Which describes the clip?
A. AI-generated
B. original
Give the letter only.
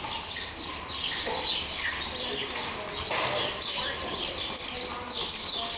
B